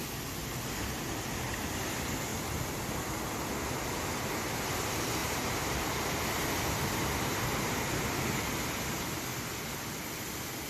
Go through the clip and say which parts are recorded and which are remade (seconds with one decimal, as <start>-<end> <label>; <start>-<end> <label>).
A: 0.0-2.3 recorded; 2.3-2.9 remade; 2.9-5.2 recorded; 5.2-6.2 remade; 6.2-10.7 recorded